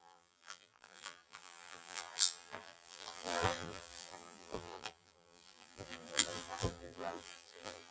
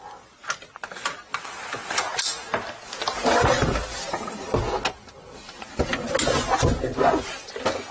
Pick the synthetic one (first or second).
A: first